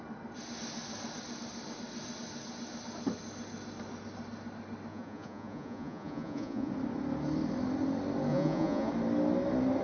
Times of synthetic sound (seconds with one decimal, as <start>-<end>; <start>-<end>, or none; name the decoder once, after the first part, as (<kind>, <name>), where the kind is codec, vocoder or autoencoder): 4.9-6.7 (vocoder, Vocos); 8.3-8.9